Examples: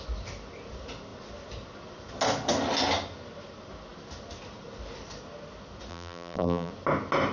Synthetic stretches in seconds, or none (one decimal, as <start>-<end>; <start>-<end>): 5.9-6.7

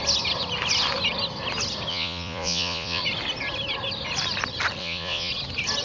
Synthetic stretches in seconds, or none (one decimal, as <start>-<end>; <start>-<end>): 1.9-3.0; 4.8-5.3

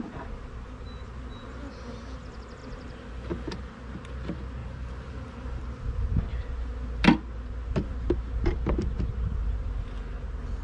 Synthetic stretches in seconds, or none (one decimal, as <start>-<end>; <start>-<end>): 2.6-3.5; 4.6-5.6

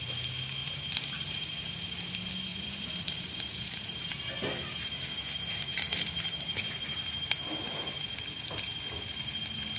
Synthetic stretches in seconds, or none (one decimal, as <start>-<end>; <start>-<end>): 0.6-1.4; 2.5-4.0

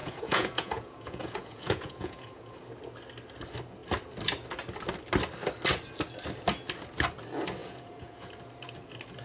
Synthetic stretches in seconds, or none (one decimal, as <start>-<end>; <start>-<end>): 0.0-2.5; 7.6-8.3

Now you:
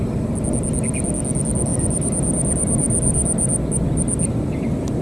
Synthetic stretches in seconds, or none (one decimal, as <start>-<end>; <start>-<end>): 1.7-4.3